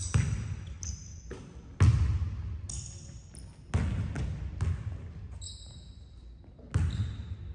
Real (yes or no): yes